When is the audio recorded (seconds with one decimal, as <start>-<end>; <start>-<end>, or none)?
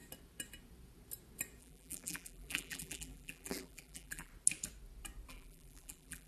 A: 0.0-1.6; 4.3-5.3